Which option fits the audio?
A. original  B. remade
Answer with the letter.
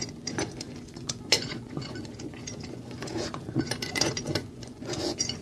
B